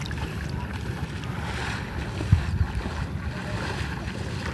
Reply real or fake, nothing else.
real